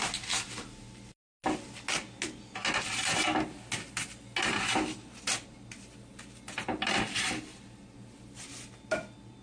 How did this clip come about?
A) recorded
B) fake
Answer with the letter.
A